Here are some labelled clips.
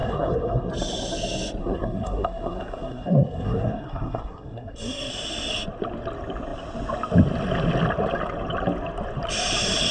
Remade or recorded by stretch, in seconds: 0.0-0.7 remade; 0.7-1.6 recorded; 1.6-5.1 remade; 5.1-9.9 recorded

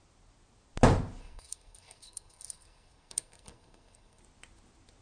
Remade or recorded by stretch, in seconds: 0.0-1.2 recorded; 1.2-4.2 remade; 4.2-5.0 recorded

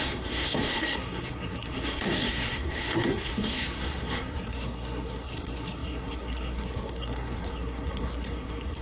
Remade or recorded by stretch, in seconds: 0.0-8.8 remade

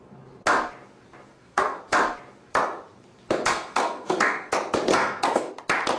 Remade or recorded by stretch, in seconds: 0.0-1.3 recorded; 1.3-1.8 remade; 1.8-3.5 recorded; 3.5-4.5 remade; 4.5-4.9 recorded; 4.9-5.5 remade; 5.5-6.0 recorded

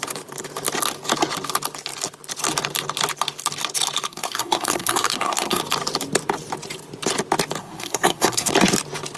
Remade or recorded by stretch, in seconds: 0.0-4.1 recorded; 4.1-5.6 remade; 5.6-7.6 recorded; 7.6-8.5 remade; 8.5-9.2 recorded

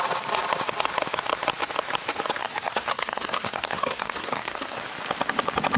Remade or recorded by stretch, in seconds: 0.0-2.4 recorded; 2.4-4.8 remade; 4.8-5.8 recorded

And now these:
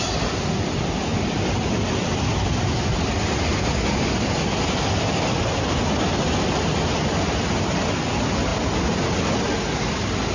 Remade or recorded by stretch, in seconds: 0.0-10.3 recorded

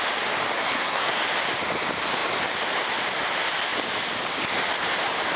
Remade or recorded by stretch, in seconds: 0.0-0.6 recorded; 0.6-1.1 remade; 1.1-5.4 recorded